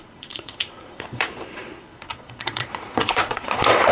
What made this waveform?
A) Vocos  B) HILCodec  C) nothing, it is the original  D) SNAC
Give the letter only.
A